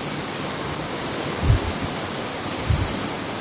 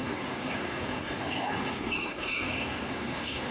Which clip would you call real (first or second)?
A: first